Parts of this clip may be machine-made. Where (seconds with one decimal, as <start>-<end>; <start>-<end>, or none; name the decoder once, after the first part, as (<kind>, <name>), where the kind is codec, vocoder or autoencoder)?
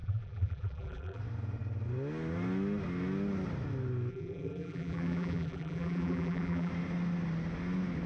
0.0-1.2 (vocoder, BigVGAN v2); 4.1-6.7